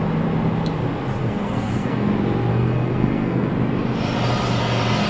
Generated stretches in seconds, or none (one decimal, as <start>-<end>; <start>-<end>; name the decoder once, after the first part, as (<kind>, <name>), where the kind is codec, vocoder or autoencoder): 1.2-2.1 (codec, SNAC); 2.5-3.5